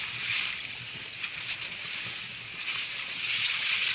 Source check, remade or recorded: recorded